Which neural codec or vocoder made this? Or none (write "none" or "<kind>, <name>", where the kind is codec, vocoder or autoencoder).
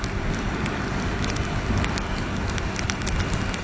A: none